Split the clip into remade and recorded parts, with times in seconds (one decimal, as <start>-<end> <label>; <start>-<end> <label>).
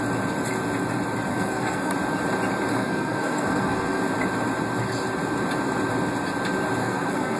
0.0-1.3 recorded; 1.3-1.9 remade; 1.9-2.7 recorded; 2.7-4.0 remade; 4.0-6.8 recorded; 6.8-7.4 remade